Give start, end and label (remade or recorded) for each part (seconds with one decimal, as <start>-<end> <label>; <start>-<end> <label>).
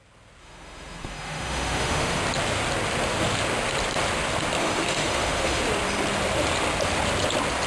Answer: 0.0-0.4 recorded; 0.4-2.2 remade; 2.2-4.6 recorded; 4.6-5.6 remade; 5.6-7.7 recorded